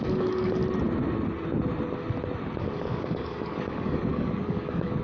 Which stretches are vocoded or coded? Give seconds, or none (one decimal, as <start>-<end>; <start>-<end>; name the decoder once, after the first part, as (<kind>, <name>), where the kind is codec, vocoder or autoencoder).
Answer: 0.0-0.6 (codec, DAC); 2.6-5.0